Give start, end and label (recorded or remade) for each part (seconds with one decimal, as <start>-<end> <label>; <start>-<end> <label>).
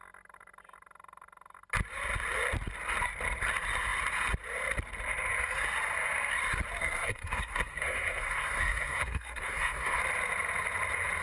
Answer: 0.0-6.8 recorded; 6.8-10.0 remade; 10.0-11.2 recorded